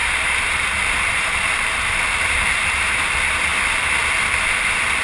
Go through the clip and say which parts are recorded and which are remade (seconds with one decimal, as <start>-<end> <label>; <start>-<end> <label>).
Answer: 0.0-3.0 remade; 3.0-5.0 recorded